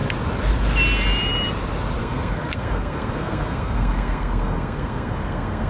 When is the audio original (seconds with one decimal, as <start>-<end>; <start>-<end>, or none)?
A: 0.0-2.0